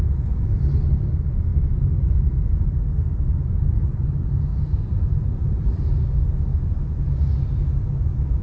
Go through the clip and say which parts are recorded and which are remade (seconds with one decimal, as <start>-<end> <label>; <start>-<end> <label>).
0.0-1.5 recorded; 1.5-4.1 remade; 4.1-4.5 recorded; 4.5-5.0 remade; 5.0-6.5 recorded; 6.5-7.3 remade; 7.3-8.4 recorded